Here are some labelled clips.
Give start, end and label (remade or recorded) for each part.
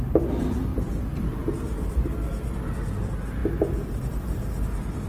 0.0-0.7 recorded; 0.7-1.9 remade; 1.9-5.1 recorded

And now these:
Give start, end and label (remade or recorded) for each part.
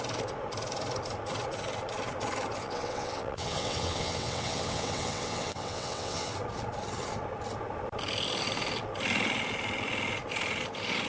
0.0-2.6 recorded; 2.6-6.3 remade; 6.3-11.1 recorded